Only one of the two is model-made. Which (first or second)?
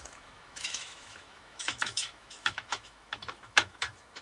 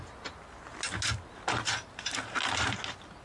first